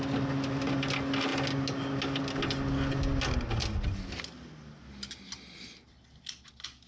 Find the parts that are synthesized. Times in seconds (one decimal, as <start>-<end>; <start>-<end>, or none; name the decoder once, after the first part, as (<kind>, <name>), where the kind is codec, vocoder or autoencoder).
none